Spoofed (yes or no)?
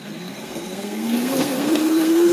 yes